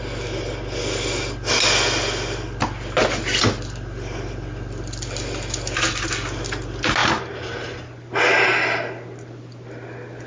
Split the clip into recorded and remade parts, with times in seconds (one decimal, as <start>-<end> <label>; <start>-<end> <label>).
0.0-10.3 recorded